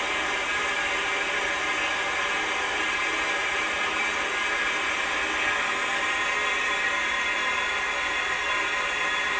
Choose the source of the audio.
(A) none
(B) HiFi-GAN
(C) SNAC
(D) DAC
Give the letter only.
A